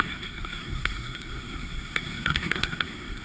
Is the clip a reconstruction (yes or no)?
yes